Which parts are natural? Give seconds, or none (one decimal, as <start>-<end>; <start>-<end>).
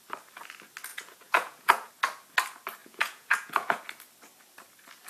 0.0-0.9; 1.9-2.8; 3.8-5.1